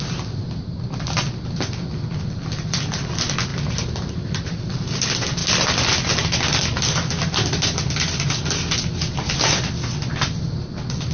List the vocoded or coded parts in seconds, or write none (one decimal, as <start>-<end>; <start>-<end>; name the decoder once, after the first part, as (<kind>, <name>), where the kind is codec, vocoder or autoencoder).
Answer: 3.5-4.6 (vocoder, BigVGAN v2)